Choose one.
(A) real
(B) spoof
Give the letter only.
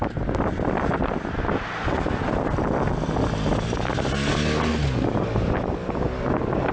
A